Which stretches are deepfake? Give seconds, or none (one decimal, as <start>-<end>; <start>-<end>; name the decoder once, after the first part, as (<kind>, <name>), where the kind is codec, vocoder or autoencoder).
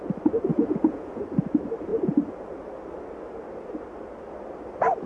0.5-1.2 (vocoder, Vocos)